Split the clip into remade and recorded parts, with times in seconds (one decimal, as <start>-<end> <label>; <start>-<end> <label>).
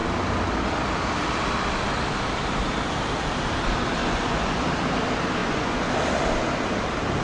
0.0-4.0 recorded; 4.0-4.6 remade; 4.6-5.4 recorded; 5.4-5.9 remade; 5.9-7.2 recorded